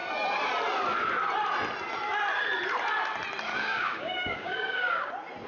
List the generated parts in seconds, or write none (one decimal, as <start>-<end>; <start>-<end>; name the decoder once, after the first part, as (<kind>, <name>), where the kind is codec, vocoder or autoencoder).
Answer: 3.5-5.1 (codec, DAC)